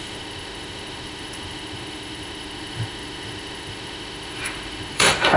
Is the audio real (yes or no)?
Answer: no